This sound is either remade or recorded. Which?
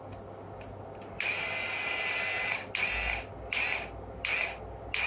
recorded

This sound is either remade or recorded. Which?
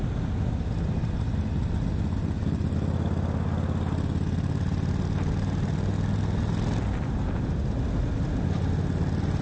recorded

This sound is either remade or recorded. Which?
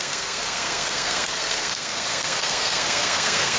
remade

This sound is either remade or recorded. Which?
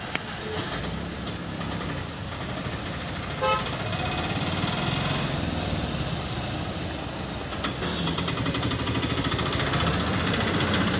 recorded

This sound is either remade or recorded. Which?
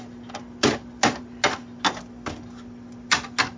recorded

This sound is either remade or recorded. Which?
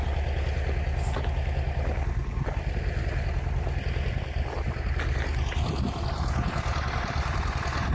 recorded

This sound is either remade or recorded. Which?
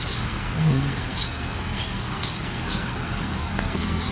remade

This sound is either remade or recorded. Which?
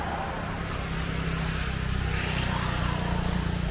recorded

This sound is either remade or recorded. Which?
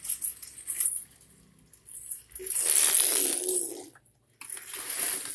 recorded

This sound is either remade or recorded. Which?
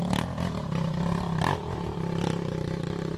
recorded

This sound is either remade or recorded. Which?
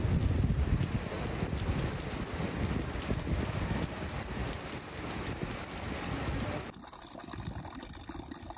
recorded